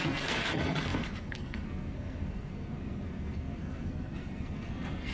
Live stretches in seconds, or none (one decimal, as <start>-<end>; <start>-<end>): none